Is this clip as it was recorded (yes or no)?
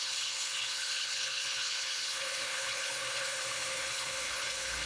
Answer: no